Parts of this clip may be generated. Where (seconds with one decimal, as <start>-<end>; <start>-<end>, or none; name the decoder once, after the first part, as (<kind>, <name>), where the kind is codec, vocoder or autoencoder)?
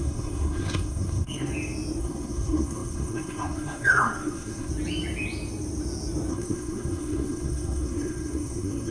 0.0-1.5 (codec, SNAC); 2.0-4.7; 6.3-8.9